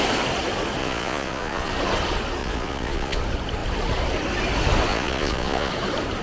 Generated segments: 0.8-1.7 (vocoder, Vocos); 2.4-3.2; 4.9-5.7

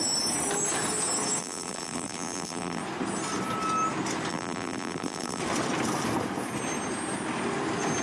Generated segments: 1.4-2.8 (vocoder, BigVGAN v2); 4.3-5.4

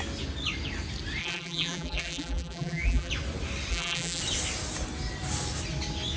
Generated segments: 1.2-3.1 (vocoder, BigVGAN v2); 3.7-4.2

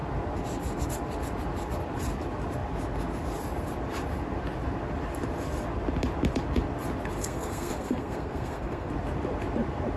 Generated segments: 7.2-8.9 (codec, SNAC)

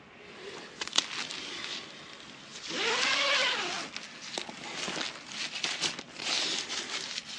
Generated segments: none

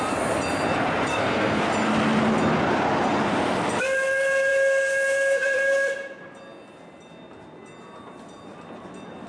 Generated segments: 1.1-1.6 (codec, SNAC)